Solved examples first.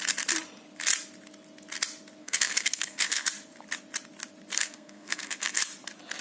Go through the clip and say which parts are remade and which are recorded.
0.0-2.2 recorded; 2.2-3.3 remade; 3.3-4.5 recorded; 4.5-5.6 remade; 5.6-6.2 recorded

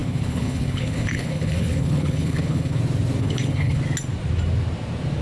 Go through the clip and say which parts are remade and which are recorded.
0.0-2.8 remade; 2.8-3.2 recorded; 3.2-3.8 remade; 3.8-5.2 recorded

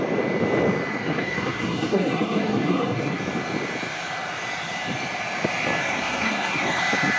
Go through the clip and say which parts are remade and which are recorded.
0.0-0.9 recorded; 0.9-3.2 remade; 3.2-5.8 recorded; 5.8-6.8 remade; 6.8-7.2 recorded

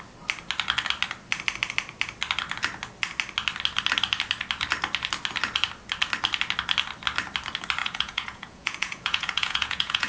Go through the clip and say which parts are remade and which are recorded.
0.0-7.8 recorded; 7.8-10.1 remade

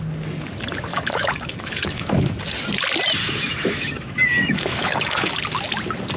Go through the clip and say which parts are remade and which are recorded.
0.0-0.9 recorded; 0.9-2.3 remade; 2.3-3.2 recorded; 3.2-5.3 remade; 5.3-6.2 recorded